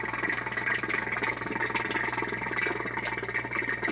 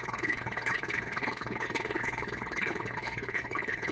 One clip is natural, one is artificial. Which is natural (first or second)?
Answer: first